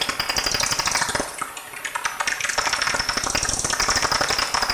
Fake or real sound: real